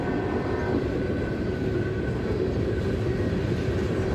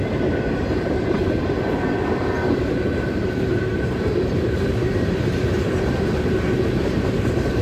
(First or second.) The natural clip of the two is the first